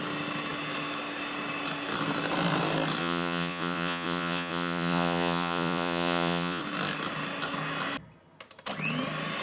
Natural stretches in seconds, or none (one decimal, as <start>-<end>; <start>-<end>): 0.0-3.0; 6.6-9.4